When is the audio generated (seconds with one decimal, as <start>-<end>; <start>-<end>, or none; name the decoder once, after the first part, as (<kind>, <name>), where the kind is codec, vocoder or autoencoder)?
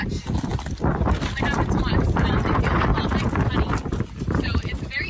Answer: 0.0-0.5 (vocoder, BigVGAN v2); 1.8-2.9; 4.2-5.1